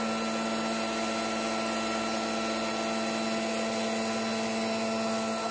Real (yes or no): yes